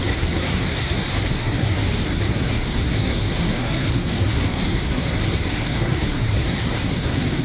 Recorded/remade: remade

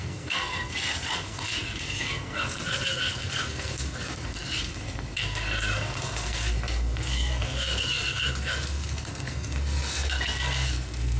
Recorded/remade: remade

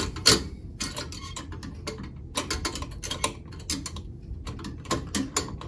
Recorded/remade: recorded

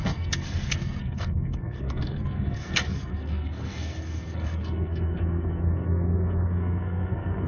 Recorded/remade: remade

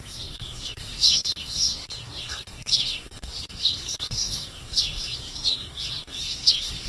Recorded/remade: remade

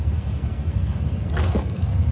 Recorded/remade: remade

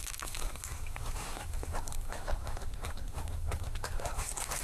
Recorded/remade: remade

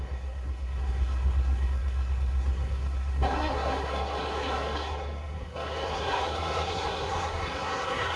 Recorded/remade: remade